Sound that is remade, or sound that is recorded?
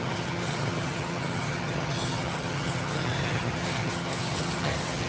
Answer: remade